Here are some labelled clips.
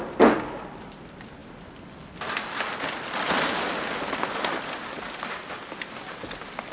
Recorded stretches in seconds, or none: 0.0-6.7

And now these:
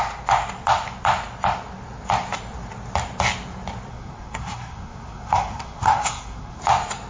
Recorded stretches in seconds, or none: 0.0-3.9; 6.6-7.1